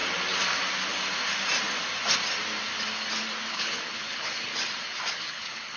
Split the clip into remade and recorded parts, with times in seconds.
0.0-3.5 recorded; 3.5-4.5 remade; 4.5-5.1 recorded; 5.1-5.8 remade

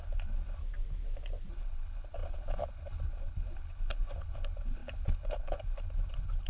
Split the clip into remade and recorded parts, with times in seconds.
0.0-0.6 remade; 0.6-1.5 recorded; 1.5-6.5 remade

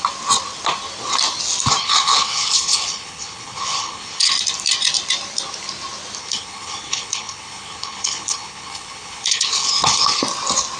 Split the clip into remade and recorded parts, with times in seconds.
0.0-1.8 recorded; 1.8-4.3 remade; 4.3-6.2 recorded; 6.2-10.2 remade; 10.2-10.8 recorded

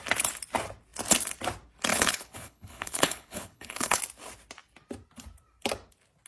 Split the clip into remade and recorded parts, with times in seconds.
0.0-1.9 recorded; 1.9-4.0 remade; 4.0-6.3 recorded